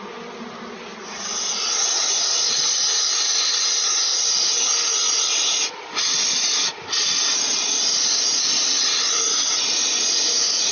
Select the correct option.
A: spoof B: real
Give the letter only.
B